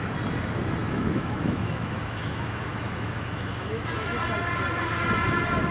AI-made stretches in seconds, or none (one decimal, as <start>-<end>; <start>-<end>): 0.8-4.2